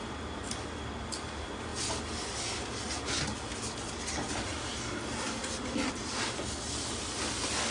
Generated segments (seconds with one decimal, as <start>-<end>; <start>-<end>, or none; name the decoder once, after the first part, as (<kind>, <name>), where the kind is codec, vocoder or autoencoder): none